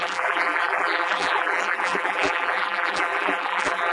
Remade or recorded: remade